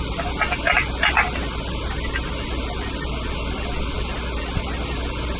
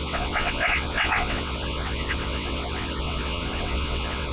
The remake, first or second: second